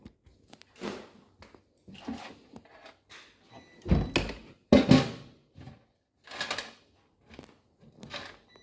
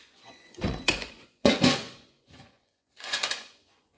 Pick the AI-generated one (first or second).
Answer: second